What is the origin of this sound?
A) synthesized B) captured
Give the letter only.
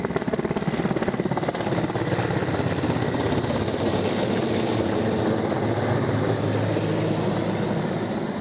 B